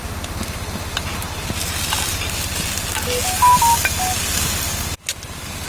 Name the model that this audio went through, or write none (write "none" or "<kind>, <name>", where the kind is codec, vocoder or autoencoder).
none